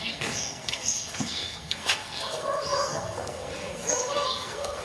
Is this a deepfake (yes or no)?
yes